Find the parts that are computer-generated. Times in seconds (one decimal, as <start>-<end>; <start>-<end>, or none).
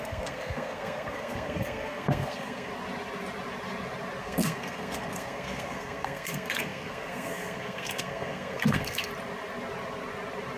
0.0-2.7; 4.2-9.1